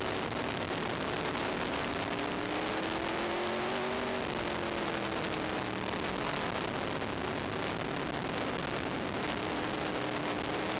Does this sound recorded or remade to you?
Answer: recorded